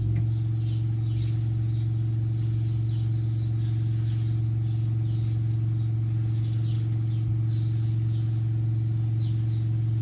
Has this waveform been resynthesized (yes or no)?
no